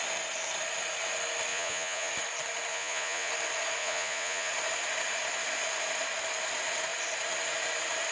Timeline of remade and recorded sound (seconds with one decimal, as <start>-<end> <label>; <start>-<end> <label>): 0.0-1.5 recorded; 1.5-2.1 remade; 2.1-2.7 recorded; 2.7-3.3 remade; 3.3-3.8 recorded; 3.8-4.5 remade; 4.5-8.1 recorded

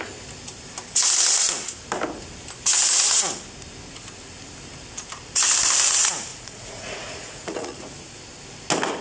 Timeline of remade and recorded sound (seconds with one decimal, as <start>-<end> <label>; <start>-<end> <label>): 0.0-6.3 recorded; 6.3-7.9 remade; 7.9-9.0 recorded

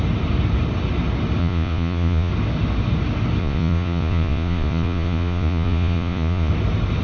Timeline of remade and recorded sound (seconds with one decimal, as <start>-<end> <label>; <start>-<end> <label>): 0.0-1.4 recorded; 1.4-2.3 remade; 2.3-3.4 recorded; 3.4-6.5 remade; 6.5-7.0 recorded

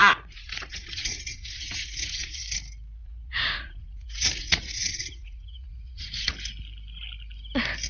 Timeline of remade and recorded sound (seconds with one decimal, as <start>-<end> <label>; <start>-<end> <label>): 0.0-2.4 remade; 2.4-3.0 recorded; 3.0-6.3 remade; 6.3-7.9 recorded